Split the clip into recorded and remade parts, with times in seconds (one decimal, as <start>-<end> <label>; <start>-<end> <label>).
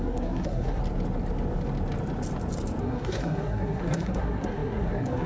0.0-0.8 remade; 0.8-2.8 recorded; 2.8-5.3 remade